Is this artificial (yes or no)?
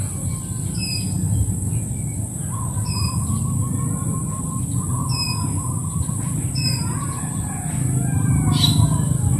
no